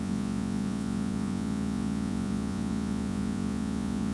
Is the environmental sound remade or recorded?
remade